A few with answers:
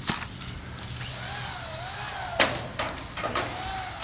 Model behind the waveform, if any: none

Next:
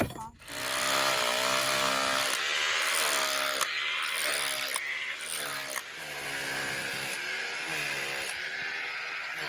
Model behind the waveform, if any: none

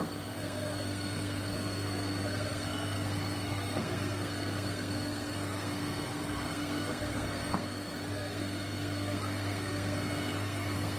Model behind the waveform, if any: codec, SNAC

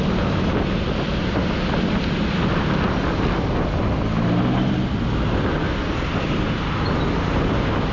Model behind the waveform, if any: none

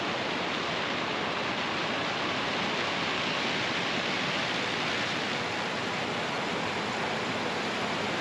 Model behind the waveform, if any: none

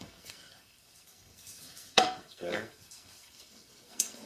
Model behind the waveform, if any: codec, SNAC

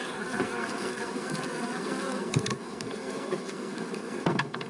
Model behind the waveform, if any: codec, SNAC